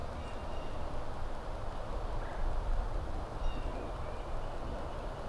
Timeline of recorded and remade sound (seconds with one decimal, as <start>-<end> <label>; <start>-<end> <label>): 0.0-5.3 recorded